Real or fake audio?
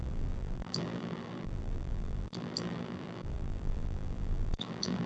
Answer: fake